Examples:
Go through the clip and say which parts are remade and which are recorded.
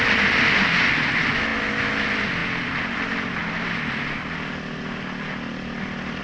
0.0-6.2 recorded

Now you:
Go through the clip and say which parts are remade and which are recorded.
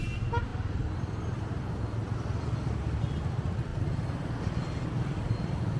0.0-5.8 recorded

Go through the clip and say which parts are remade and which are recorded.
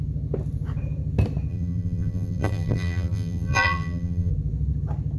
0.0-1.5 recorded; 1.5-4.3 remade; 4.3-5.2 recorded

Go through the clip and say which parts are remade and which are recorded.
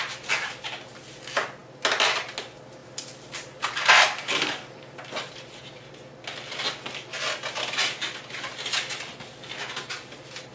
0.0-2.8 recorded; 2.8-5.3 remade; 5.3-10.5 recorded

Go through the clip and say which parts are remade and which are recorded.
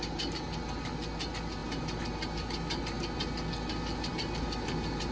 0.0-5.1 recorded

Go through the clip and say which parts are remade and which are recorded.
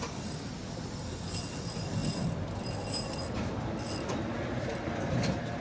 0.0-2.0 recorded; 2.0-3.9 remade; 3.9-5.6 recorded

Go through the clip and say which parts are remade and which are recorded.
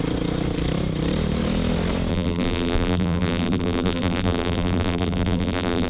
0.0-2.1 recorded; 2.1-5.9 remade